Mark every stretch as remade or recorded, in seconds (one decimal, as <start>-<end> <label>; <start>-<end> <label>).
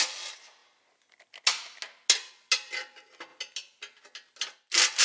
0.0-5.0 recorded